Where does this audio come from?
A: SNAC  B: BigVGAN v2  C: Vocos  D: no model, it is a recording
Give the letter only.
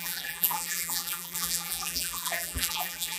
B